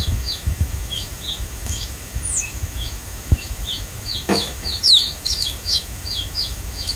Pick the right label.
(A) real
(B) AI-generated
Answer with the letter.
B